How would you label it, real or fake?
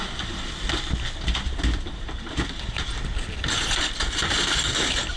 real